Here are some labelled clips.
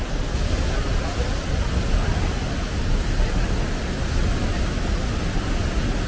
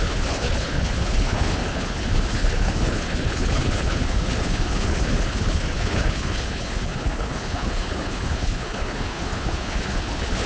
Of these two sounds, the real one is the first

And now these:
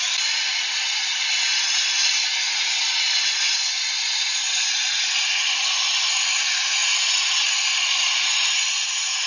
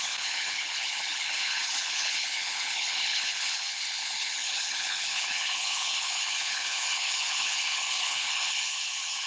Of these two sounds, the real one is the first